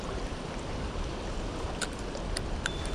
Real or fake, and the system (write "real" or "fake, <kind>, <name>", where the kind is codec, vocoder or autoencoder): fake, vocoder, BigVGAN v2